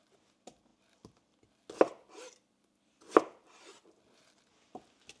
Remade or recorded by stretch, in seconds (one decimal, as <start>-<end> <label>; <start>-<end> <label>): 0.0-5.2 recorded